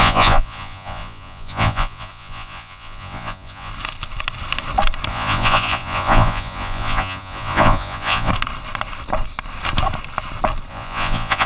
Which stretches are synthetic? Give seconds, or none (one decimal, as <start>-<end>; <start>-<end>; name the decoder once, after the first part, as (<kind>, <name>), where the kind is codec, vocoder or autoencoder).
0.0-3.7 (vocoder, Vocos); 5.1-8.3; 10.7-11.5